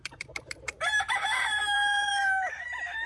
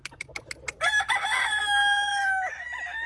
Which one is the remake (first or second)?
first